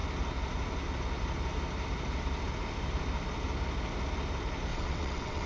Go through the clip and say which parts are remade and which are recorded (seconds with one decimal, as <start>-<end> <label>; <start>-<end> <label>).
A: 0.0-4.7 recorded; 4.7-5.5 remade